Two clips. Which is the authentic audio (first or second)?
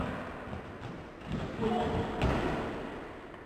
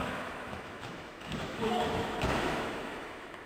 first